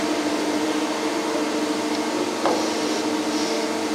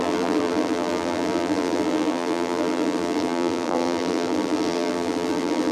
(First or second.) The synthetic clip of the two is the second